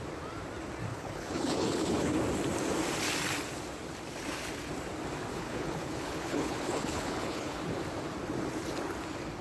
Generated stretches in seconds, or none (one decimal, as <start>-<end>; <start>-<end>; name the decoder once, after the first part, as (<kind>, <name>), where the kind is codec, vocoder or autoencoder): 0.9-2.2 (codec, HILCodec); 5.3-7.6